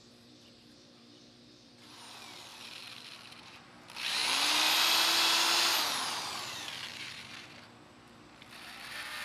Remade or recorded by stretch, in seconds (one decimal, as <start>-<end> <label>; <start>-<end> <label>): 0.0-4.2 remade; 4.2-6.1 recorded; 6.1-9.2 remade